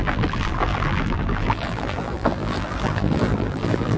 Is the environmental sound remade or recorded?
remade